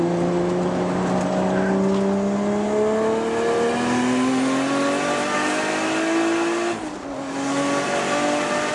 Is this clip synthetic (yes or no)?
no